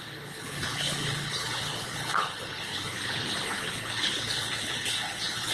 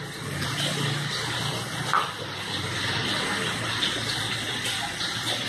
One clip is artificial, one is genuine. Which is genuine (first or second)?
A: second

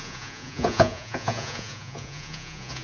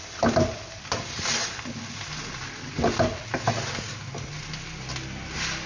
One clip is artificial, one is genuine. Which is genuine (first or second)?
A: second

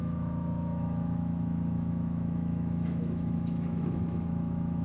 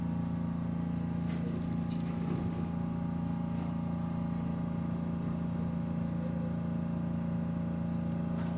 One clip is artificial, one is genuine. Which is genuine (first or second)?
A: second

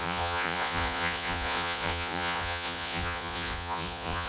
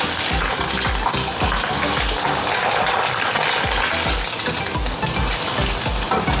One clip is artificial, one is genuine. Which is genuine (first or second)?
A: second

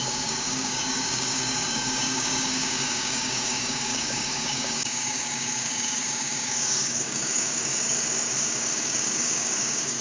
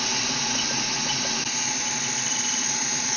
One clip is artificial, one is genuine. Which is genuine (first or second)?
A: second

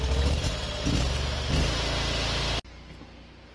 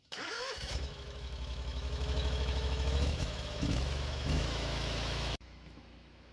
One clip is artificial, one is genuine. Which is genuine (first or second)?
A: first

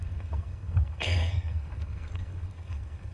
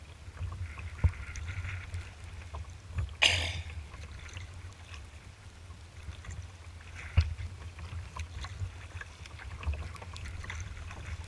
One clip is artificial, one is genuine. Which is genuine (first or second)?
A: second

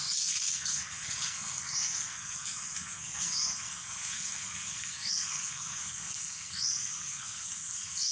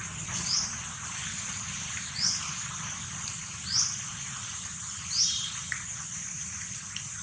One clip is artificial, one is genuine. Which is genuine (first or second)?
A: second